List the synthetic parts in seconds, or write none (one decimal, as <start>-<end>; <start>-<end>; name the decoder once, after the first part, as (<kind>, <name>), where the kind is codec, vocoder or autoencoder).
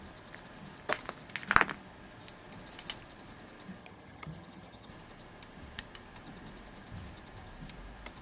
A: 3.8-4.9 (vocoder, HiFi-GAN)